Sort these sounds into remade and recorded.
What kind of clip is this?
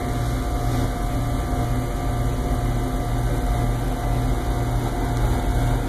recorded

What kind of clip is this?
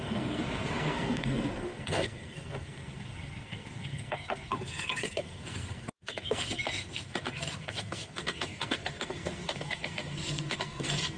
remade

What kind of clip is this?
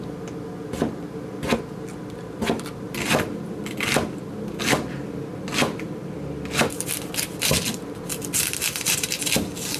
recorded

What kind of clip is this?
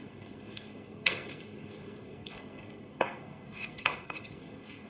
remade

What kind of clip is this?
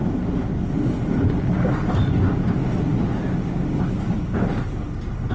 recorded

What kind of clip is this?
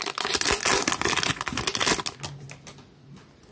recorded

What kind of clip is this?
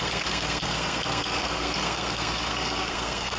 remade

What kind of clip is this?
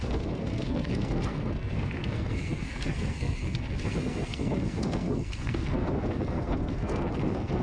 remade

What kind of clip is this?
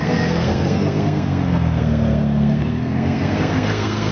remade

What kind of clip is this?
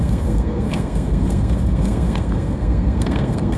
remade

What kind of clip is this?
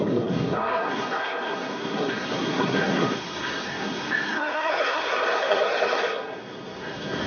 remade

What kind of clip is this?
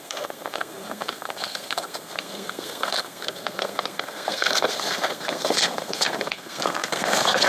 remade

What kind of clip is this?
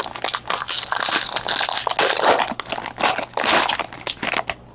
recorded